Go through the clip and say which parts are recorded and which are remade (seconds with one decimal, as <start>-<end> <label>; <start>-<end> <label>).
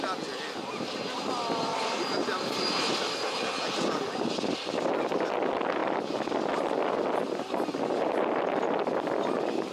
0.0-9.7 recorded